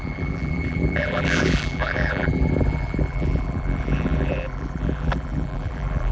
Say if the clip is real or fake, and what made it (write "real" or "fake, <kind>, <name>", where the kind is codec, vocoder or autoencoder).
fake, vocoder, BigVGAN v2